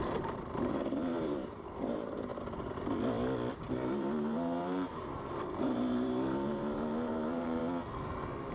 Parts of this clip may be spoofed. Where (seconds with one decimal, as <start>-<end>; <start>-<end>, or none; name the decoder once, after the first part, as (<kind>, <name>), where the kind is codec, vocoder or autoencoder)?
0.0-2.3 (vocoder, BigVGAN v2); 3.7-7.6